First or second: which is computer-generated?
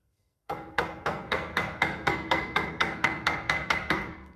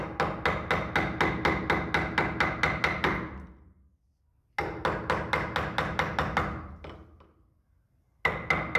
first